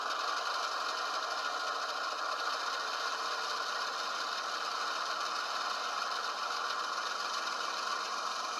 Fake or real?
real